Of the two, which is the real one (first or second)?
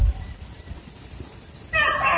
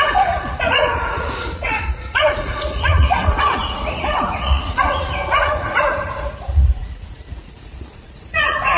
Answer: first